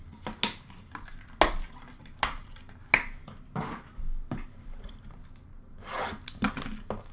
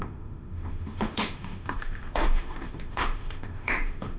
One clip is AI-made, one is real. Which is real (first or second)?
first